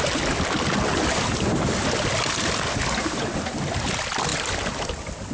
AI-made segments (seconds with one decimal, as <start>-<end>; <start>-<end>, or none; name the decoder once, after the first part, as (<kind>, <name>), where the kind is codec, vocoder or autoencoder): none